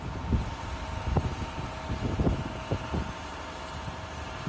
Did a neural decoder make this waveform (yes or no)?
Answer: no